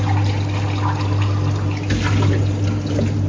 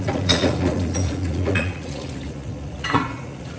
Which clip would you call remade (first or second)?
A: second